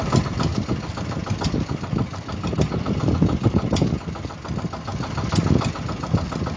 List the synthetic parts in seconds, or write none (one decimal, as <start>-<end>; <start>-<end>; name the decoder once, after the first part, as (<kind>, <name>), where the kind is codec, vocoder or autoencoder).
none